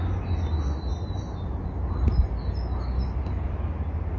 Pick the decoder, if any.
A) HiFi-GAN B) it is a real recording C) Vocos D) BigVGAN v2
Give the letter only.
B